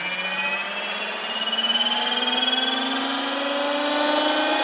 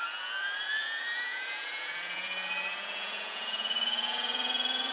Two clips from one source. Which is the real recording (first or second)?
first